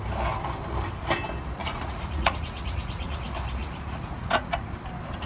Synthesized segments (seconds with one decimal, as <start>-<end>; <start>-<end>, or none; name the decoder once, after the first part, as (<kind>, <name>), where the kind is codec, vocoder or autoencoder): 1.6-3.2 (vocoder, Vocos); 3.6-4.7